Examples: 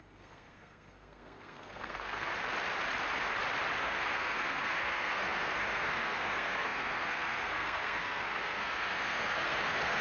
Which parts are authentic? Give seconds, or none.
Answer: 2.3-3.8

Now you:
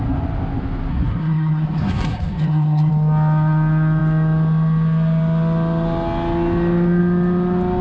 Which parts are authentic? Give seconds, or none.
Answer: 0.0-0.9; 2.9-7.8

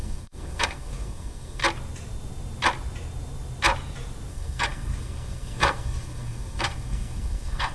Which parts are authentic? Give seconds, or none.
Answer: 1.6-4.3

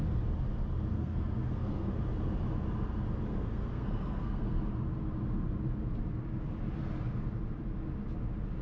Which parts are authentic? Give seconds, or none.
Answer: 0.0-0.9; 1.9-3.3; 4.6-8.6

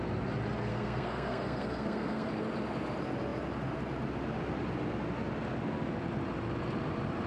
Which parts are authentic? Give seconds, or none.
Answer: 0.0-0.7; 2.3-7.3

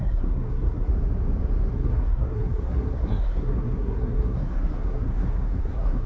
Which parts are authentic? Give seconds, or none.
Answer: 0.9-1.7

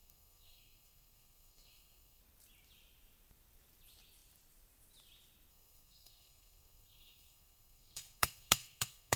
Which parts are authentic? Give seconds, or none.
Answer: 2.2-5.5

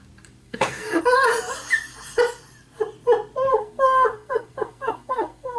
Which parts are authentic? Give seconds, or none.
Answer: 0.0-0.4; 1.0-3.5